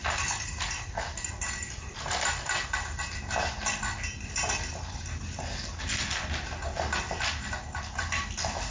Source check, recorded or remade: recorded